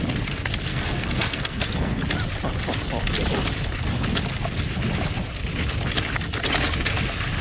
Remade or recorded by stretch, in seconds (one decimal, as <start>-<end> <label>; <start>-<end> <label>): 0.0-0.7 recorded; 0.7-2.0 remade; 2.0-7.4 recorded